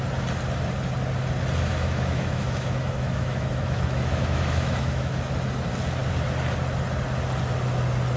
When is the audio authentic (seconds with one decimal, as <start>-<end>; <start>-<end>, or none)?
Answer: 0.0-1.7; 5.3-8.2